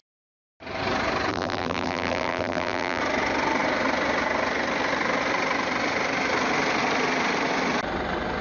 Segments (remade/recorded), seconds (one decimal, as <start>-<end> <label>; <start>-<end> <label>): 0.0-1.3 recorded; 1.3-3.0 remade; 3.0-8.4 recorded